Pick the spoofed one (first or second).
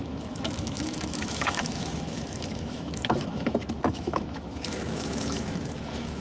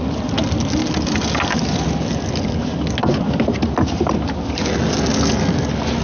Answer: first